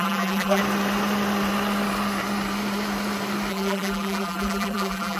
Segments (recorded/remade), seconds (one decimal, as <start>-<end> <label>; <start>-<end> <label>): 0.0-0.6 remade; 0.6-3.5 recorded; 3.5-5.2 remade